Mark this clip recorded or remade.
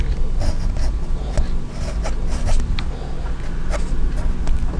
recorded